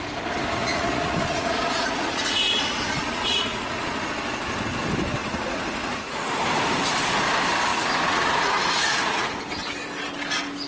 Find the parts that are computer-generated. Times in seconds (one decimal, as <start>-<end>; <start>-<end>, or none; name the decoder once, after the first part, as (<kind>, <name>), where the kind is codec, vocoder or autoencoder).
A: 0.6-4.1 (vocoder, Vocos); 5.2-6.3; 7.7-9.4